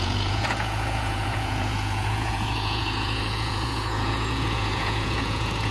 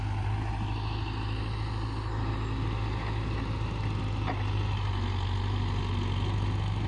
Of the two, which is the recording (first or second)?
second